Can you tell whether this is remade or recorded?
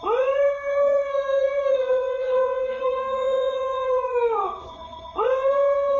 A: remade